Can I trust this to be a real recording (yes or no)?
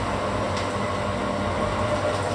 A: yes